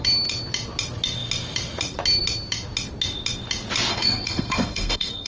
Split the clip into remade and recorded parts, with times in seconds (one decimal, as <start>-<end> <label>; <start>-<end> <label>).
0.0-3.9 recorded; 3.9-5.3 remade

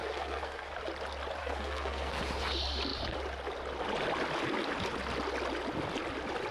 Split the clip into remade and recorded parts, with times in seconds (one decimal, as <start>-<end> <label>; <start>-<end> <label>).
0.0-0.8 remade; 0.8-1.4 recorded; 1.4-2.2 remade; 2.2-6.5 recorded